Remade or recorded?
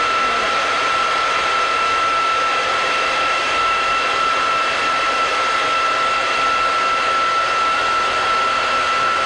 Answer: recorded